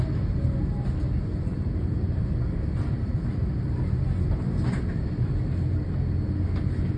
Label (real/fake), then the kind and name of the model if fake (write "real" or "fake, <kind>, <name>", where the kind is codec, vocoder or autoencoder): real